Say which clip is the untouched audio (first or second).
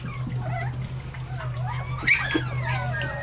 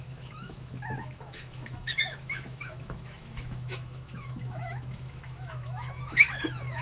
first